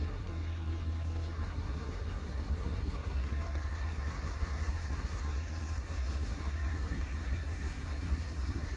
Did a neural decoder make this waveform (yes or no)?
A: yes